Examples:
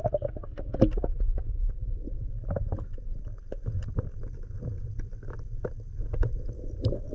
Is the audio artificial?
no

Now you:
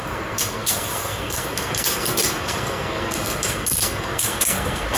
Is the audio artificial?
yes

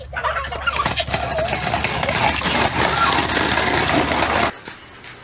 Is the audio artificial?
no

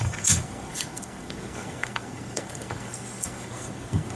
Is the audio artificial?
yes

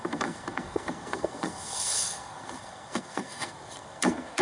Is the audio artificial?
yes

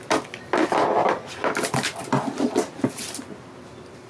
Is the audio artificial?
no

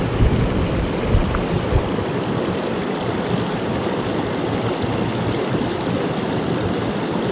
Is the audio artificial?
no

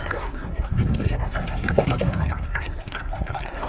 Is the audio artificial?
yes